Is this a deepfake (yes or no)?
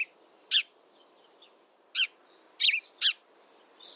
no